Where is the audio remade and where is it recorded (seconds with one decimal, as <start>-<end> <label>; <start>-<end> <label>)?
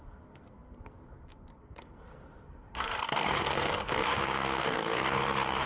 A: 0.0-5.7 remade